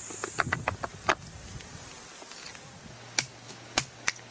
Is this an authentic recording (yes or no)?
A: yes